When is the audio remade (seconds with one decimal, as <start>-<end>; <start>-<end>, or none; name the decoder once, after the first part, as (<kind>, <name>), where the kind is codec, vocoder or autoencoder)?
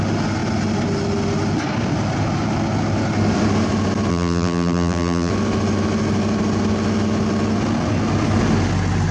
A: 4.1-5.3 (vocoder, BigVGAN v2)